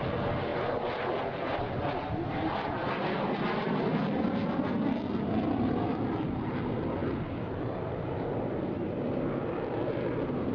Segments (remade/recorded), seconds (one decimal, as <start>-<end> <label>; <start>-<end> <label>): 0.0-10.5 recorded